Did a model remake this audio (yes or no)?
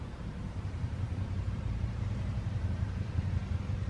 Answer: yes